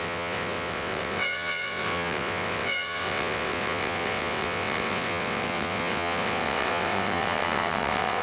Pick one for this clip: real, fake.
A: fake